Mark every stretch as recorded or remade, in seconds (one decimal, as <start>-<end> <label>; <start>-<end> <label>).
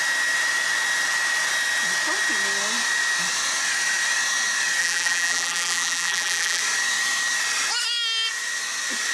0.0-4.8 recorded; 4.8-6.6 remade; 6.6-9.1 recorded